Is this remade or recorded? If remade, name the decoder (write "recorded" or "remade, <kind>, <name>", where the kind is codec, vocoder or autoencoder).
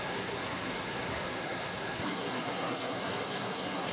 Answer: remade, codec, SNAC